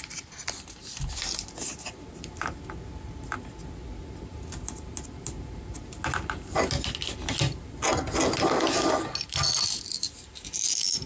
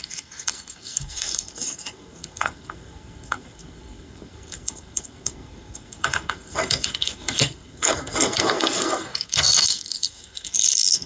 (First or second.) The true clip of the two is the first